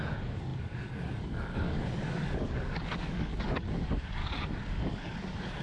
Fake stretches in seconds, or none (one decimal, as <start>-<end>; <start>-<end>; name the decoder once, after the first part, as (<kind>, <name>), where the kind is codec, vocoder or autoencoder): 0.0-4.2 (codec, DAC); 4.7-5.6